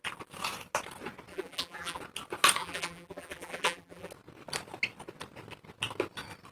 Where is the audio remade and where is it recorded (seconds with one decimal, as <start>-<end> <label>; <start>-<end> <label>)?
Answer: 0.0-1.3 recorded; 1.3-2.0 remade; 2.0-2.6 recorded; 2.6-4.1 remade; 4.1-6.5 recorded

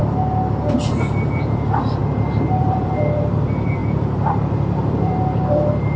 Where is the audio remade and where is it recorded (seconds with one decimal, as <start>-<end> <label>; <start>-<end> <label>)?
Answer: 0.0-0.7 recorded; 0.7-2.0 remade; 2.0-2.6 recorded; 2.6-6.0 remade